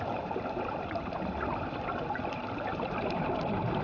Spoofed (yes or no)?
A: no